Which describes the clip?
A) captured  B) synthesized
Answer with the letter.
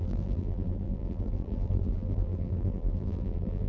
B